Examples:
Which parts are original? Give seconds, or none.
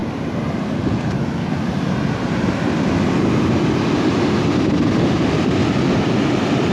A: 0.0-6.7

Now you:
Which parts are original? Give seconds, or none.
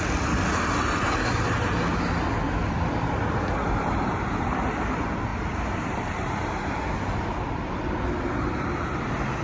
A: 0.0-3.6; 4.1-5.3; 9.0-9.4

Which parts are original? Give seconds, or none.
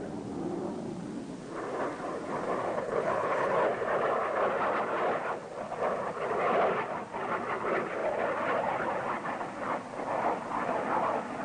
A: 0.0-2.7; 3.5-11.4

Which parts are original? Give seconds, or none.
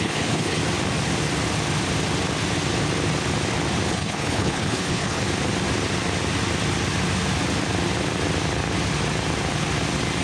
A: 0.6-3.9; 5.2-10.2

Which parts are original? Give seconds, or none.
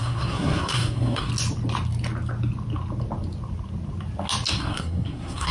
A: 1.3-4.5